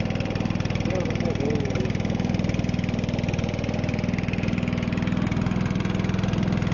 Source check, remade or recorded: recorded